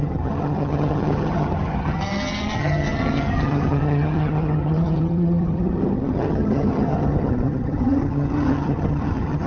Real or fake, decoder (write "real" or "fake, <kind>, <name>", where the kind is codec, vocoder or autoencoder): fake, vocoder, HiFi-GAN